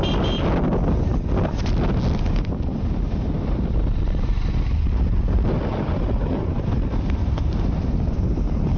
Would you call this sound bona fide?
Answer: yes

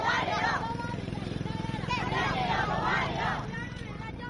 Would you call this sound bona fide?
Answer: no